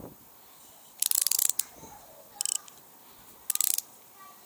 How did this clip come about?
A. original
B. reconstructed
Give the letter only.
A